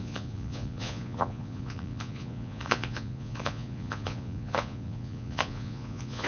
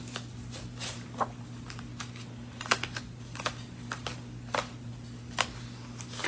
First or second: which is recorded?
second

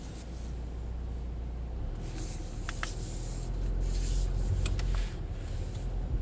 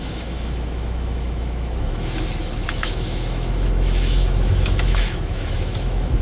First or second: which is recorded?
first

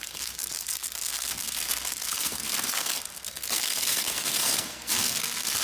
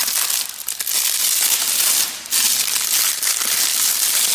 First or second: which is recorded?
second